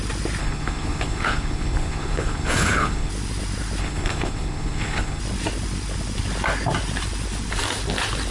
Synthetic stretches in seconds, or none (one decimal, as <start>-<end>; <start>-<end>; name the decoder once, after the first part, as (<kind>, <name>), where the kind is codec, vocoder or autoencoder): 0.4-3.1 (codec, HILCodec); 3.8-5.2